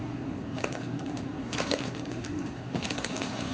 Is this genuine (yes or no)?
no